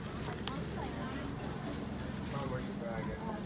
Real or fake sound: real